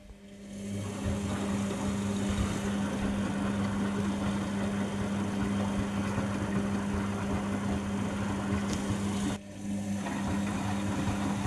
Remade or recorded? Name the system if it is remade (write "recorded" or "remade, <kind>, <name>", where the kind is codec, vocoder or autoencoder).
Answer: recorded